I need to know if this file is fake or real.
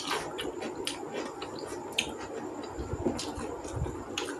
real